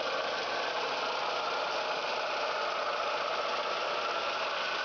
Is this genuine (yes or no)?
yes